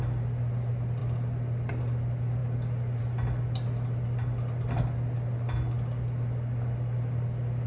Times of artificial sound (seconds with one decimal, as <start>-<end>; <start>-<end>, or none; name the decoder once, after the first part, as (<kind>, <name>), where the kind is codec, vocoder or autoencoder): none